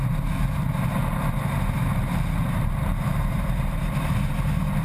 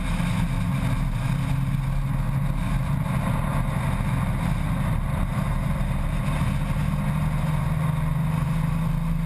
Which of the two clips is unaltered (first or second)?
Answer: second